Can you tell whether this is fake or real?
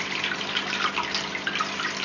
real